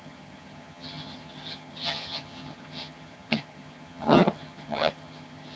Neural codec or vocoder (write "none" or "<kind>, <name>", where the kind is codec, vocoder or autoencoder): vocoder, HiFi-GAN